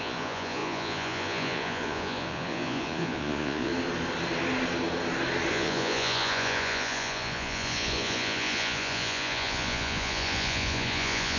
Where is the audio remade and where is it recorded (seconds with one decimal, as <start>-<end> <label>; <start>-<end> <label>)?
0.0-3.7 remade; 3.7-5.5 recorded; 5.5-11.4 remade